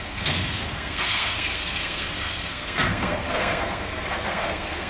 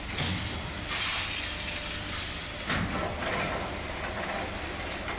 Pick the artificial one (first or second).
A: first